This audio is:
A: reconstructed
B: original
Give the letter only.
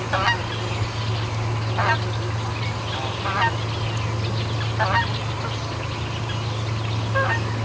B